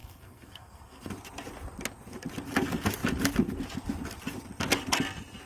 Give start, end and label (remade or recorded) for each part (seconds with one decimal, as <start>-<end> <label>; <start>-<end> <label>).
0.0-1.1 remade; 1.1-5.5 recorded